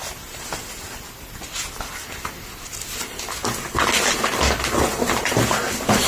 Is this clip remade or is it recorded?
recorded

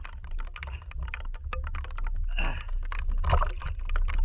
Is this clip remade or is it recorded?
recorded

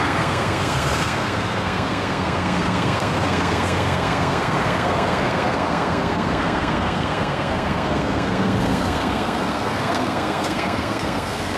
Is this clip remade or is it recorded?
remade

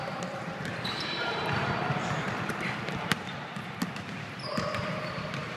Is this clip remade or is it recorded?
remade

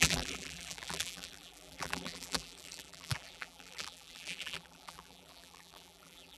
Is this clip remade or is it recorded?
remade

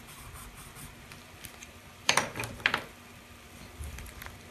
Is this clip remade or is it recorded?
remade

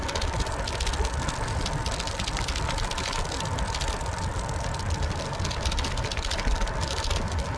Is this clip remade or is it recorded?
recorded